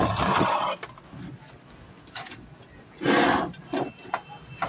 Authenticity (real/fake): real